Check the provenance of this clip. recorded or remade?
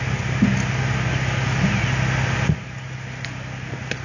recorded